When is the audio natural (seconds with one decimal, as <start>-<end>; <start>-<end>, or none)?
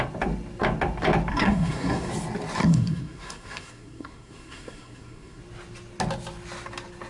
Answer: 0.0-1.3; 2.1-2.6; 5.4-7.1